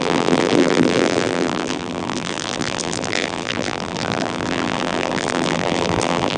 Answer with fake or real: fake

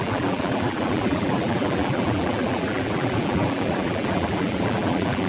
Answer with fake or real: fake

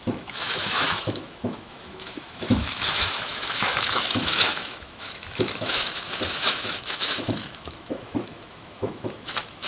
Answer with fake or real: fake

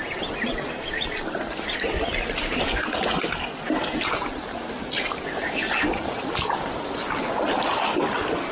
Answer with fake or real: real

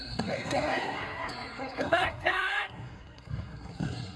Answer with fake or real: fake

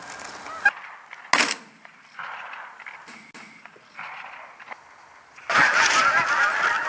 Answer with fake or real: real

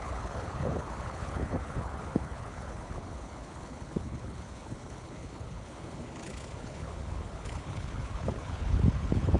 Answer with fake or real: fake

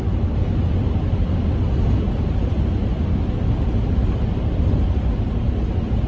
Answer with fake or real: real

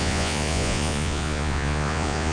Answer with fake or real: fake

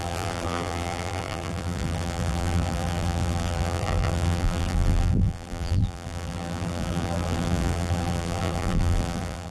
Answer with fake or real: fake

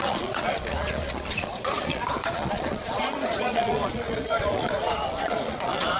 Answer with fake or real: fake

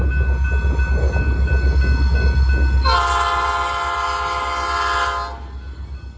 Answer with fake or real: real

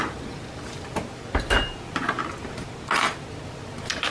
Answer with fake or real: real